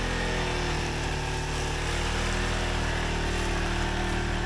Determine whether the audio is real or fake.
real